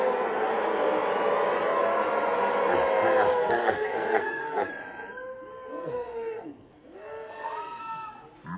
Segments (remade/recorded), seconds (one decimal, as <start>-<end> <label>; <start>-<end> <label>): 0.0-3.3 recorded; 3.3-4.7 remade; 4.7-5.7 recorded; 5.7-7.8 remade; 7.8-8.6 recorded

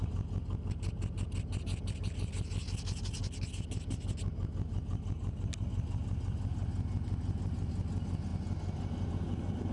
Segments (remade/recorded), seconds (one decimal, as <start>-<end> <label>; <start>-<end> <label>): 0.0-9.7 recorded

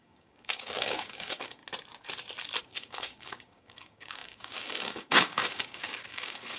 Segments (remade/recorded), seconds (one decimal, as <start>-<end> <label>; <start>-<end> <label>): 0.0-1.6 remade; 1.6-2.6 recorded; 2.6-6.6 remade

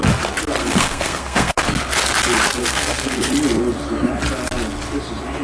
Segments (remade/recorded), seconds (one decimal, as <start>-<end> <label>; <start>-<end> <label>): 0.0-0.6 recorded; 0.6-1.6 remade; 1.6-2.6 recorded; 2.6-3.3 remade; 3.3-5.4 recorded

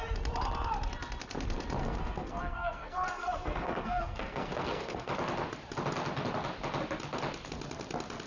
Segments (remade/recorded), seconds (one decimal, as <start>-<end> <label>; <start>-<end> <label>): 0.0-1.8 recorded; 1.8-5.1 remade; 5.1-8.3 recorded

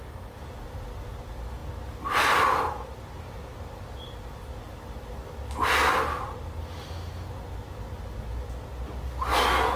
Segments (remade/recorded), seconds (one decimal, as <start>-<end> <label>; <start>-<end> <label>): 0.0-9.8 recorded

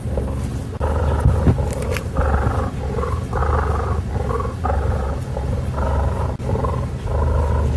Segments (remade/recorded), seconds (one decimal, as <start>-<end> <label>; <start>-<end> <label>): 0.0-7.8 recorded

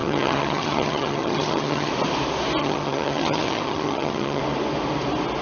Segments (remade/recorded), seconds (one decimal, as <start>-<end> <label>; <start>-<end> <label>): 0.0-1.9 remade; 1.9-2.6 recorded; 2.6-4.4 remade; 4.4-5.4 recorded